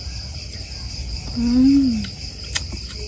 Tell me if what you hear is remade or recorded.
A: recorded